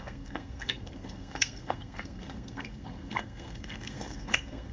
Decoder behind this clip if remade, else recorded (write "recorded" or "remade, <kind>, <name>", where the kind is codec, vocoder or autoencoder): remade, codec, SNAC